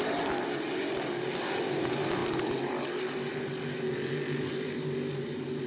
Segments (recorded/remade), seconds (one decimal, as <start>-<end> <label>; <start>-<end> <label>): 0.0-5.7 recorded